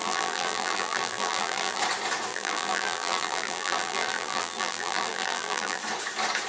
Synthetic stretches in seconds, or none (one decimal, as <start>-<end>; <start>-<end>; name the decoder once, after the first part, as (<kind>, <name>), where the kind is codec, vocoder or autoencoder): 0.0-1.8 (vocoder, BigVGAN v2); 2.3-5.8